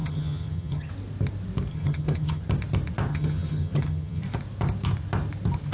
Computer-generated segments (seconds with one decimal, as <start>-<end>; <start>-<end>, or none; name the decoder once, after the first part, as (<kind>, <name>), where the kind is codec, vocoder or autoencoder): 0.0-0.9 (vocoder, HiFi-GAN); 1.7-2.4; 3.1-4.2